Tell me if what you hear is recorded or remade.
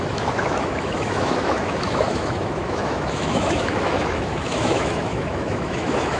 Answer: remade